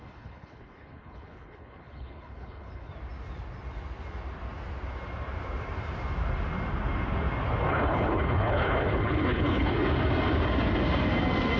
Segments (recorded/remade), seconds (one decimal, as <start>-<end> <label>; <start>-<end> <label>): 0.0-2.9 remade; 2.9-7.7 recorded; 7.7-9.7 remade; 9.7-11.6 recorded